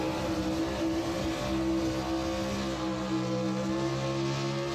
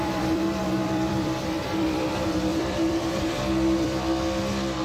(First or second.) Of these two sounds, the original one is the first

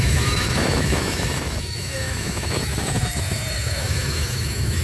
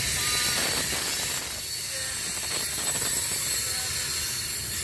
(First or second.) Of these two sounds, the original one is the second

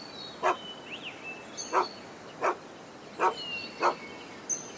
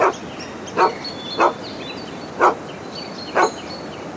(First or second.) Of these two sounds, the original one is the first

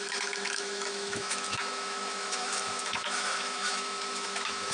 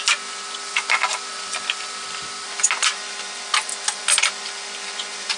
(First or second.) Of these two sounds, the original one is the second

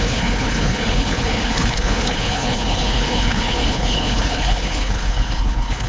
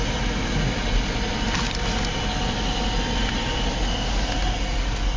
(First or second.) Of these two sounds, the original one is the second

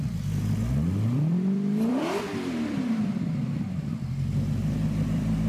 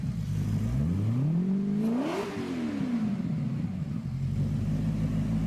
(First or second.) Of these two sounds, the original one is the second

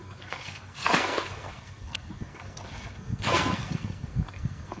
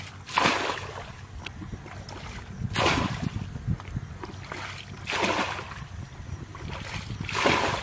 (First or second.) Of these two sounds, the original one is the second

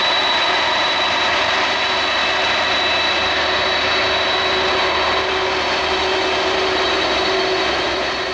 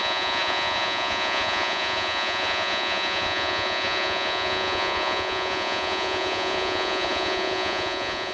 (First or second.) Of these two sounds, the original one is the first